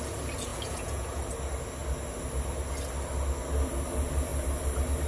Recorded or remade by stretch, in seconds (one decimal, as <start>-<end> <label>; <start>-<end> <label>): 0.0-0.5 recorded; 0.5-1.2 remade; 1.2-5.1 recorded